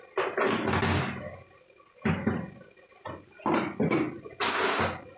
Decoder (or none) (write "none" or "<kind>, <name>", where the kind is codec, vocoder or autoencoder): none